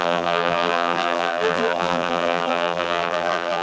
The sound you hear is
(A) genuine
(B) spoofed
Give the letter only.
B